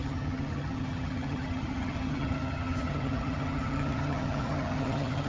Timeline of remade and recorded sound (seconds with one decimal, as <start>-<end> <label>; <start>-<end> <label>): 0.0-5.3 remade